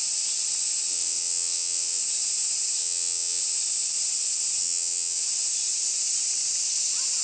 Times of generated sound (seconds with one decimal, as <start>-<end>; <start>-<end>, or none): 0.9-2.0; 2.8-3.4; 4.6-5.2